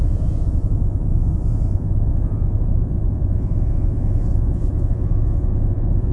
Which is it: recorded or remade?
remade